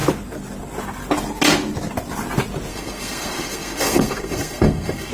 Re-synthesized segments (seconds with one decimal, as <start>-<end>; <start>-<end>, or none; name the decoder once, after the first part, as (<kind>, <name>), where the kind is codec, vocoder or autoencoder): 2.7-5.1 (codec, SNAC)